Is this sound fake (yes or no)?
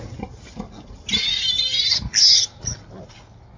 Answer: no